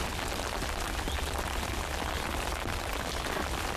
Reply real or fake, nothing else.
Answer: real